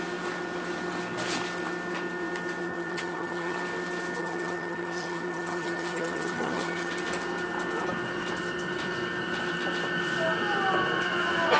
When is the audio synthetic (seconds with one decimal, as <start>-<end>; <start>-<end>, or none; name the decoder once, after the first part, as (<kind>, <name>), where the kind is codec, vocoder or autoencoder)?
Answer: 2.6-3.6 (vocoder, HiFi-GAN); 4.2-6.9